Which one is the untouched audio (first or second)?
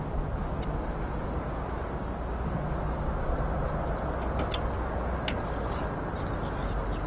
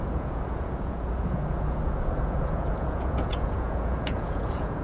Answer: first